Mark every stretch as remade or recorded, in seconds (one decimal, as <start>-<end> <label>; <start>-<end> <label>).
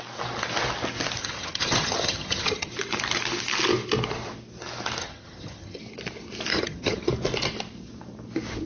0.0-1.2 recorded; 1.2-2.7 remade; 2.7-5.0 recorded; 5.0-5.8 remade; 5.8-6.5 recorded; 6.5-7.1 remade; 7.1-8.7 recorded